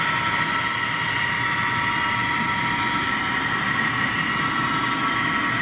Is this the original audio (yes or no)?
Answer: yes